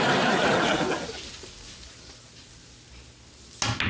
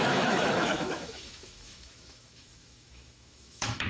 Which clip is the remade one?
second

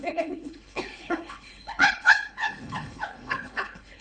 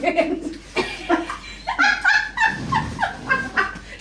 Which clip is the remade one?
first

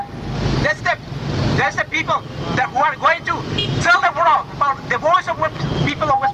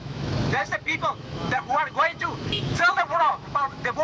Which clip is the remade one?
second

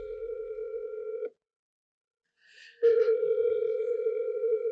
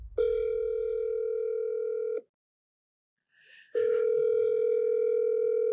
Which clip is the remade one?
first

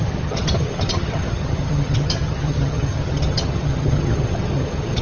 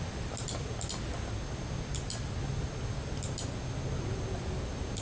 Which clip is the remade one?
first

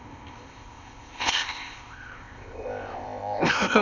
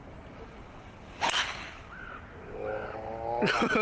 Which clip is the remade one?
first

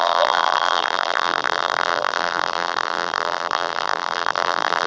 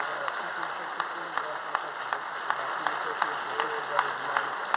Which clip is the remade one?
first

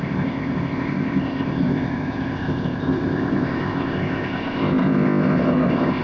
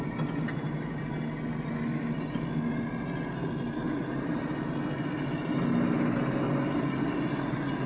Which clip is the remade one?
first